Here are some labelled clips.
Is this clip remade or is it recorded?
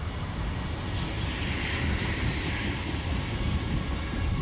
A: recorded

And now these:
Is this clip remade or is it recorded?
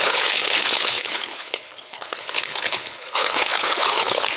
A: remade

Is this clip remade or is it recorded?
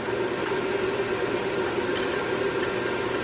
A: recorded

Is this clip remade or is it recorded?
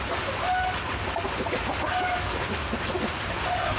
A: recorded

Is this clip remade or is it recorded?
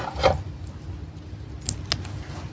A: recorded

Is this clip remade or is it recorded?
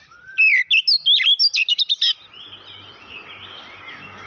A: recorded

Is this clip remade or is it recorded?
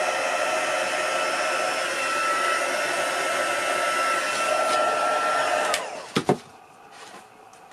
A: recorded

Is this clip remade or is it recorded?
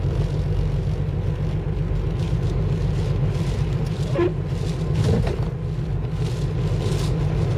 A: recorded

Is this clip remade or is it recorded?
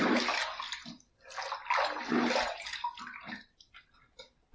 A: recorded